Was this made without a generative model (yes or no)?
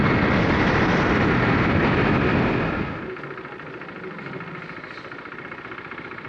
yes